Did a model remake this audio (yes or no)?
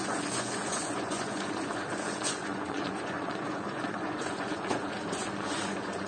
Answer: yes